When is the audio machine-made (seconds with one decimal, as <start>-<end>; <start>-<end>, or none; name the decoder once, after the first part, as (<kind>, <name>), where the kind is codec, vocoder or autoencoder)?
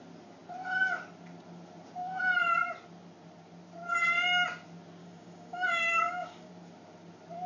5.0-6.5 (codec, DAC)